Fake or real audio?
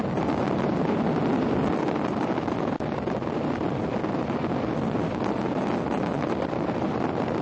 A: real